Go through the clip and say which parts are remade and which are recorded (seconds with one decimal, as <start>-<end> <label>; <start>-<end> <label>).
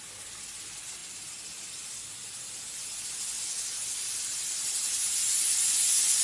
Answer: 0.0-6.2 recorded